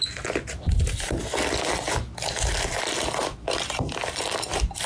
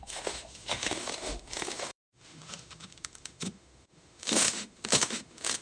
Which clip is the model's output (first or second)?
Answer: second